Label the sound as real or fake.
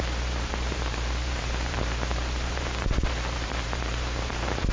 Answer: fake